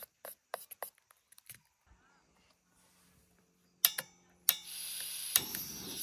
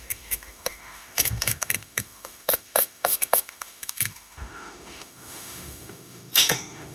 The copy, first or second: second